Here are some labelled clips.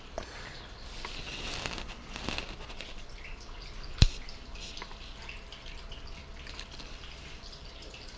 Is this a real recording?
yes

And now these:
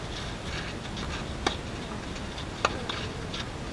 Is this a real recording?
yes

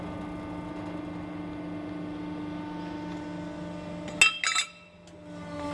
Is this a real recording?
yes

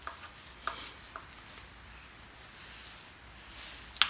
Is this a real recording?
yes